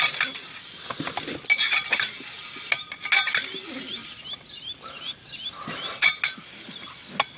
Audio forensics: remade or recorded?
recorded